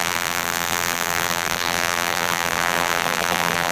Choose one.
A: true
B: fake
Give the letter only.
B